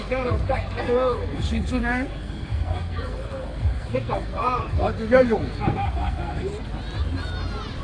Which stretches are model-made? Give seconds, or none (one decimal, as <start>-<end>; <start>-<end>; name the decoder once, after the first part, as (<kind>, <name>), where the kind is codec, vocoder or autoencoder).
0.0-6.5 (codec, SNAC)